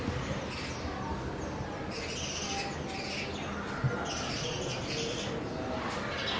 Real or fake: real